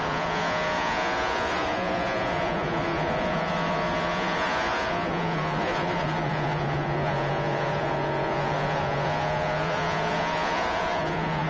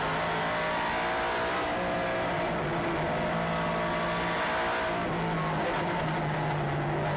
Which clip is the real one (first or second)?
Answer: second